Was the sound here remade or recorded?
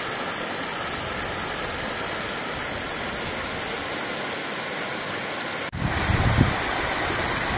recorded